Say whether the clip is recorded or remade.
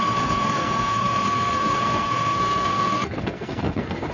remade